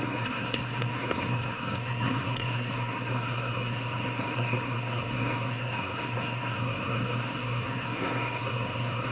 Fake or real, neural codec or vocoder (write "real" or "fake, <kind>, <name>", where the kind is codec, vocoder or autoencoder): fake, codec, SNAC